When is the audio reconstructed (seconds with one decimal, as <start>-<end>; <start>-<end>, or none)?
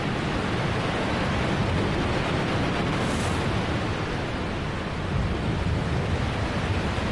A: none